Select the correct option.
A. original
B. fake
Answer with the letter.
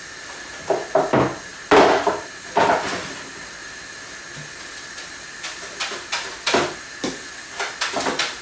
A